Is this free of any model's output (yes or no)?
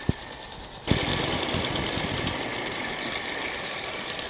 yes